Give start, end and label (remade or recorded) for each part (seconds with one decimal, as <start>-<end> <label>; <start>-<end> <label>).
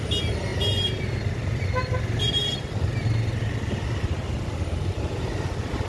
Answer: 0.0-5.9 recorded